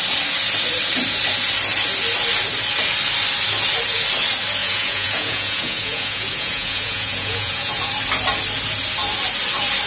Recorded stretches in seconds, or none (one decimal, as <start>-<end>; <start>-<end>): 0.0-4.6; 7.8-9.9